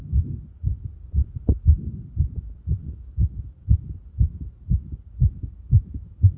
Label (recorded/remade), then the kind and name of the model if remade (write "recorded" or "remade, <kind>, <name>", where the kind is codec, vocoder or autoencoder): recorded